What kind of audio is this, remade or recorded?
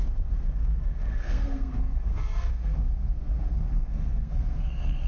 remade